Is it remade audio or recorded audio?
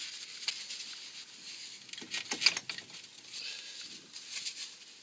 recorded